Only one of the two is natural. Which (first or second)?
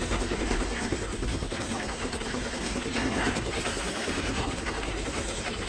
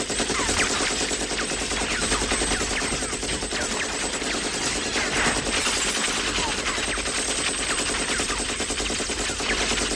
second